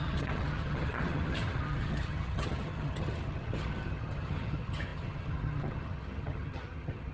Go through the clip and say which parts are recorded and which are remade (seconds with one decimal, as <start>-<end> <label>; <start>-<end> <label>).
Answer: 0.0-7.1 remade